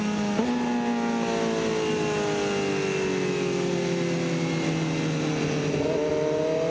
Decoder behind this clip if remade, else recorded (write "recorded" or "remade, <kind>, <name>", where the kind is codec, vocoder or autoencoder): recorded